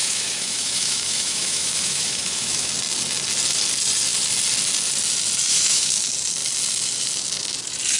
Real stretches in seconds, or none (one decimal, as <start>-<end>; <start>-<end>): 2.7-5.5; 6.0-8.0